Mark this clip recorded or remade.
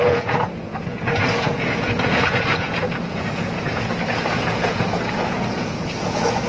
remade